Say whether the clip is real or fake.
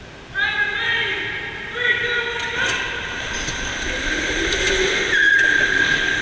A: real